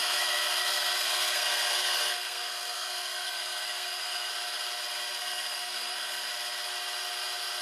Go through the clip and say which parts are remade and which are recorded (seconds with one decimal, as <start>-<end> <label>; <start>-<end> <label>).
0.0-4.3 remade; 4.3-5.1 recorded; 5.1-6.3 remade; 6.3-7.6 recorded